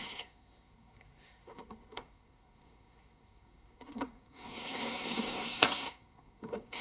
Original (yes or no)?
no